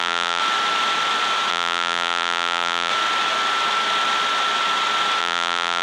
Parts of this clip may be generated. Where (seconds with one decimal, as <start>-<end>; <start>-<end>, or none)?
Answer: 0.0-0.4; 1.5-2.9; 5.2-5.8